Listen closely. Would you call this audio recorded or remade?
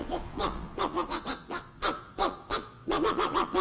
remade